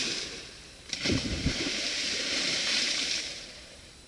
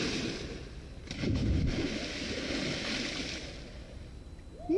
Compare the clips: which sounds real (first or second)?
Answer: second